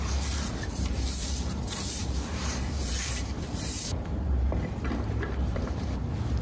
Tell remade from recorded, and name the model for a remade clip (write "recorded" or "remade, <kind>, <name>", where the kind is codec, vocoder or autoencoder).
remade, vocoder, BigVGAN v2